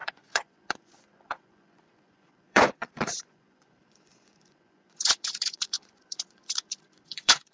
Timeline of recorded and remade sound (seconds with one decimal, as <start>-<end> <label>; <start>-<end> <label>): 0.0-7.5 remade